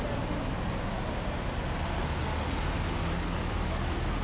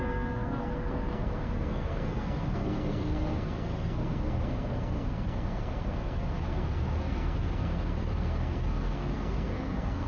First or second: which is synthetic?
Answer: second